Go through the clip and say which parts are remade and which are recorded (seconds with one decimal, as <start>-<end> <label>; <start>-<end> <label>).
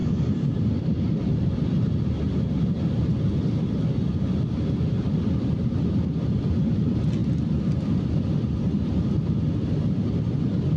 0.0-10.8 recorded